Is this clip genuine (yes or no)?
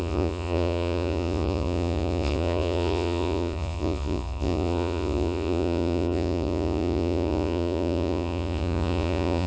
no